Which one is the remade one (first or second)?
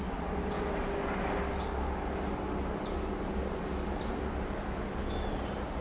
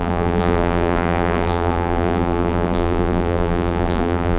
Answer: second